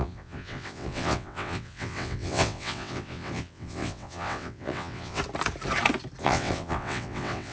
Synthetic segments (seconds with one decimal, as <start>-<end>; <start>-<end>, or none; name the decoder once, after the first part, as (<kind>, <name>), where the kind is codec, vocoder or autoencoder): 0.0-5.2 (vocoder, WaveNeXt); 6.2-7.5